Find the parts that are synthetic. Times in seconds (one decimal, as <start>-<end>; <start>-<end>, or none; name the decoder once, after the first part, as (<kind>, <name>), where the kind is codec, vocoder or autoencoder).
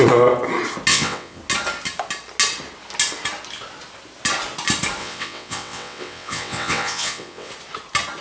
0.9-1.4 (vocoder, WaveNeXt); 5.0-7.5